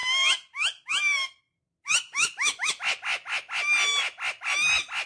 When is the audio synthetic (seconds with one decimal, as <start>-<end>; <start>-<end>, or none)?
2.1-2.7